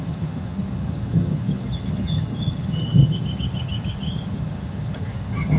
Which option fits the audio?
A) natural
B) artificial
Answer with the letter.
B